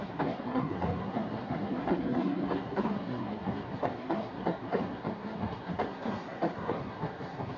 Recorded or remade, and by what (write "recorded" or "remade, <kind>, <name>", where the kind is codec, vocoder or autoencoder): remade, codec, SNAC